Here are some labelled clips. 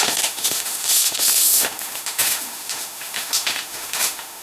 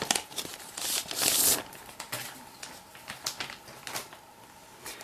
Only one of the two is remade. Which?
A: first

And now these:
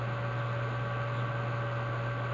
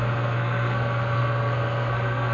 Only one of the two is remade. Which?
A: second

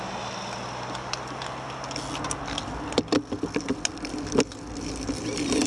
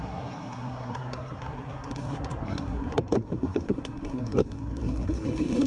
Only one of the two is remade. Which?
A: second